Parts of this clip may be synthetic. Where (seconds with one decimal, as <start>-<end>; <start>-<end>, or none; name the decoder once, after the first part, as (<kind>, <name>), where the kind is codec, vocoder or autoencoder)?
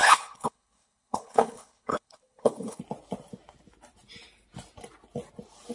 0.0-2.8 (codec, HILCodec)